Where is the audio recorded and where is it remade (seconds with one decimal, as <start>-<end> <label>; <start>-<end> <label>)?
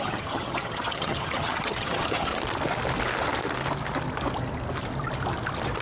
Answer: 0.0-2.3 remade; 2.3-5.8 recorded